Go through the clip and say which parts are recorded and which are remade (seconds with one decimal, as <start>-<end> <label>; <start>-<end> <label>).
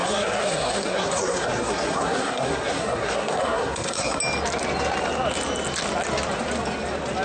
0.0-4.2 remade; 4.2-7.2 recorded